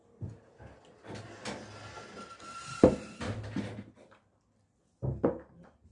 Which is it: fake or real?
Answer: real